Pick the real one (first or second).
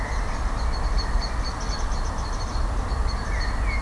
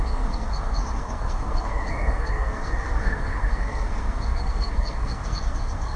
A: first